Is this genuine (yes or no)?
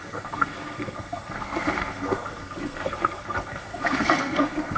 no